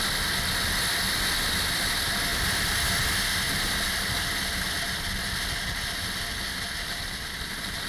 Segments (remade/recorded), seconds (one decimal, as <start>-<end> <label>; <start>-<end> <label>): 0.0-7.9 recorded